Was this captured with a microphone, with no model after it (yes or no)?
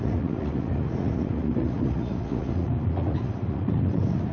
no